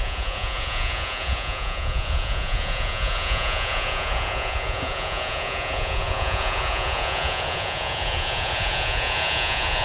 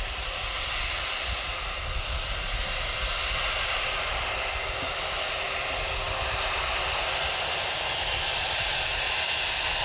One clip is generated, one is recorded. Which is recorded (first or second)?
second